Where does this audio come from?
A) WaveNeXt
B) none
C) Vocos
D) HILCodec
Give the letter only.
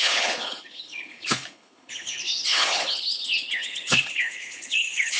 D